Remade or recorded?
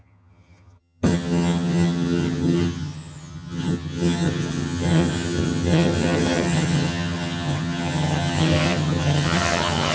remade